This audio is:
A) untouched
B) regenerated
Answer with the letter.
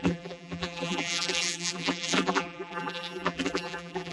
B